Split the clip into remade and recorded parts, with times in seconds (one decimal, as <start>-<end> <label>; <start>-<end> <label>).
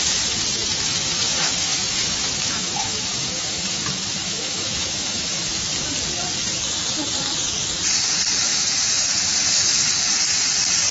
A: 0.0-0.6 recorded; 0.6-3.8 remade; 3.8-4.2 recorded; 4.2-5.6 remade; 5.6-8.5 recorded; 8.5-9.9 remade; 9.9-10.9 recorded